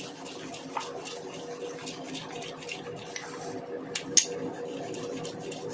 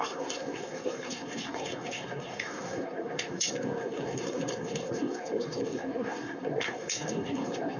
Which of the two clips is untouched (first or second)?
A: first